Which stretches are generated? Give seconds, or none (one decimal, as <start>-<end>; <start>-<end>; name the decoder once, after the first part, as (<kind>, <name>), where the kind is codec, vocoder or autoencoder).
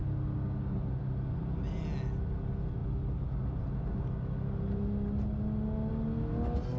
none